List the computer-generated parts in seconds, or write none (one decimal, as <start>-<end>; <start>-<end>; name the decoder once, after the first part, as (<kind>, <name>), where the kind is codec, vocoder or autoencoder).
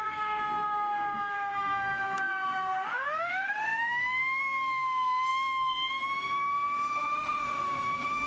0.0-8.3 (autoencoder, DAC-VAE)